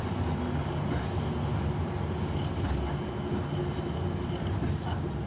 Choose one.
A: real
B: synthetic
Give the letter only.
A